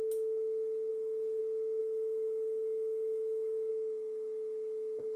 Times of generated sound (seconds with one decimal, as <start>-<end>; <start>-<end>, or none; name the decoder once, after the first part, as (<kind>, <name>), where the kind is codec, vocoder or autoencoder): 0.9-1.4 (codec, SNAC); 1.8-3.7